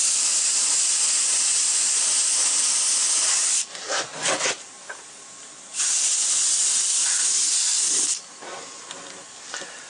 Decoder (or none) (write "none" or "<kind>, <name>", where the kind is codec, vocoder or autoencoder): none